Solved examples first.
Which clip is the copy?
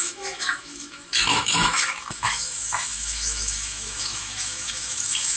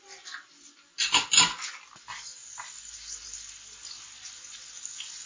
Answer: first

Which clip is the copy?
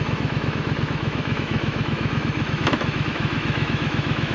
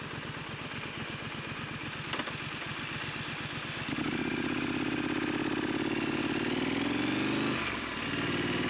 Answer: first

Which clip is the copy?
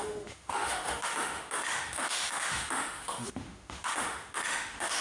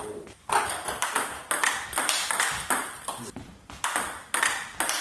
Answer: first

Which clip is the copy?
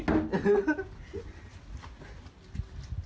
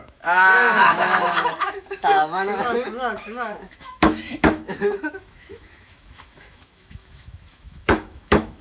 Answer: second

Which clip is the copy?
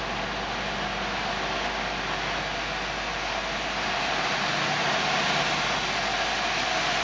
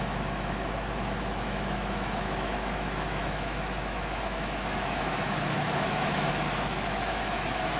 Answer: second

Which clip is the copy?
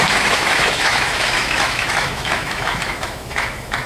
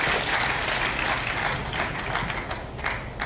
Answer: first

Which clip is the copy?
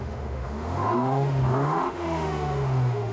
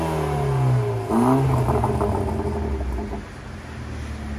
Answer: first